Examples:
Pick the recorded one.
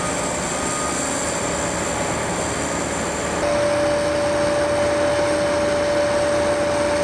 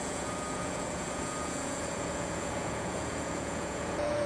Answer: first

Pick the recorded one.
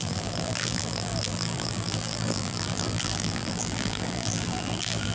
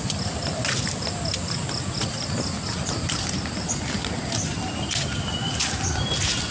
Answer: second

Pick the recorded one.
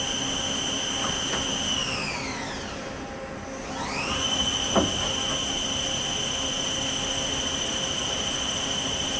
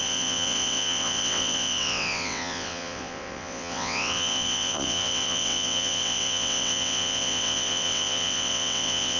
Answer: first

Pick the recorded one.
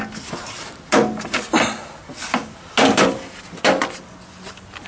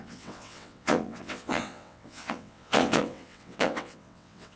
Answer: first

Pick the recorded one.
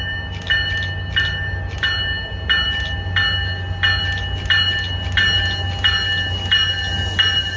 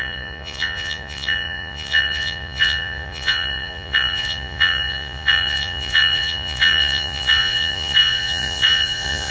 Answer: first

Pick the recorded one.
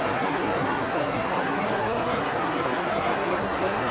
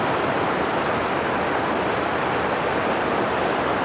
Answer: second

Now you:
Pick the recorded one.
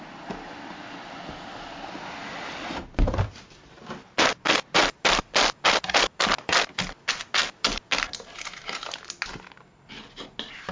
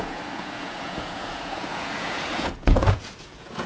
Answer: first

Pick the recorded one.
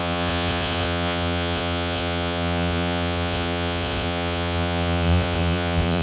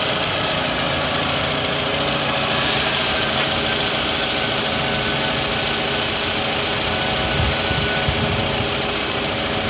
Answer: second